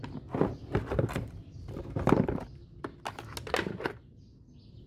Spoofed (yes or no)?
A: no